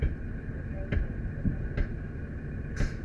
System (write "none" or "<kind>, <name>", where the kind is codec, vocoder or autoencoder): none